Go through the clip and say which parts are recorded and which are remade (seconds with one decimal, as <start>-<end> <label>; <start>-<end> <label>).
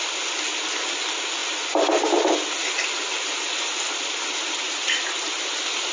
0.0-5.9 recorded